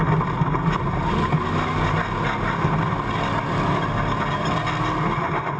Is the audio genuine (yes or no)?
yes